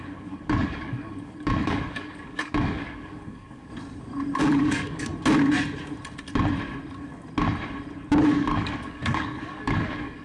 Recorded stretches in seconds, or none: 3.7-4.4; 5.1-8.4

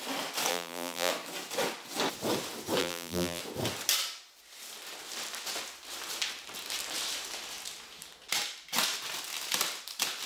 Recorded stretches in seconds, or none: 0.0-0.5; 1.1-2.8; 3.4-10.3

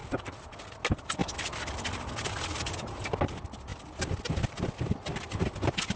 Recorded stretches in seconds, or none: 0.0-6.0

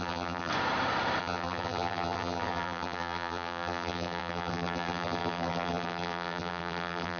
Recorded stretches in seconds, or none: 0.5-1.2

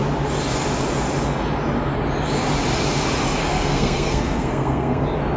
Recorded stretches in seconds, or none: 0.0-3.5; 5.0-5.4